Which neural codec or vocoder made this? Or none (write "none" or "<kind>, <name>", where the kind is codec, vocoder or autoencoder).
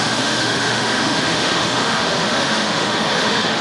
autoencoder, DAC-VAE